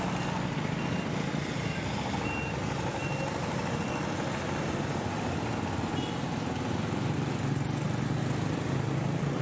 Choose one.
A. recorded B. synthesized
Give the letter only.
A